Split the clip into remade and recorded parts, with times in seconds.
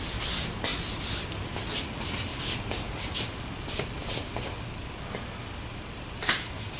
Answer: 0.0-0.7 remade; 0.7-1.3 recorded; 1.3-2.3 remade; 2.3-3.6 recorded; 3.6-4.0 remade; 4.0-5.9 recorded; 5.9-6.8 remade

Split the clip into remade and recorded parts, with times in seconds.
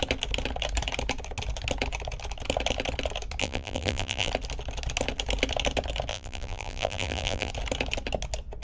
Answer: 0.0-3.4 recorded; 3.4-4.3 remade; 4.3-6.1 recorded; 6.1-7.5 remade; 7.5-8.6 recorded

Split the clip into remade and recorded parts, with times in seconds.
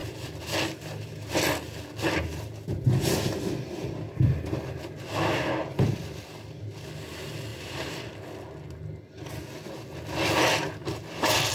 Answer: 0.0-0.6 remade; 0.6-5.6 recorded; 5.6-6.6 remade; 6.6-7.5 recorded; 7.5-8.1 remade; 8.1-10.8 recorded; 10.8-11.5 remade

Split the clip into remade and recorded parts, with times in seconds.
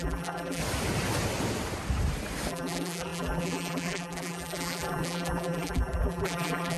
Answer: 0.0-0.6 remade; 0.6-2.5 recorded; 2.5-6.8 remade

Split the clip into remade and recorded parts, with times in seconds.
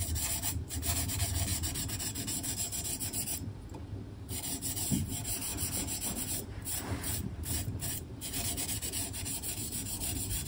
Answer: 0.0-1.5 remade; 1.5-4.1 recorded; 4.1-5.5 remade; 5.5-6.2 recorded; 6.2-10.5 remade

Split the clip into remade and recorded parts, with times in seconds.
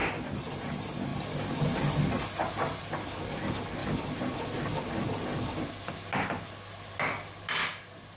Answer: 0.0-8.2 recorded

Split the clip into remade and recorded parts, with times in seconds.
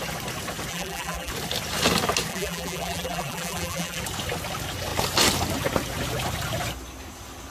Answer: 0.0-0.7 recorded; 0.7-1.3 remade; 1.3-2.3 recorded; 2.3-4.0 remade; 4.0-7.5 recorded